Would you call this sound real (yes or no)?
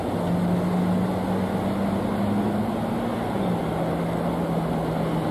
yes